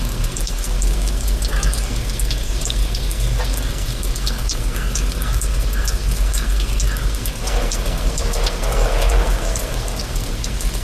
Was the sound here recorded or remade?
remade